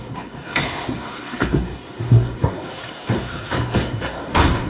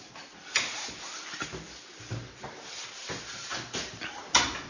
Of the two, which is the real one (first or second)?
second